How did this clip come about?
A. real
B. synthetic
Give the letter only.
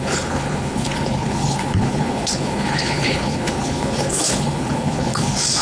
B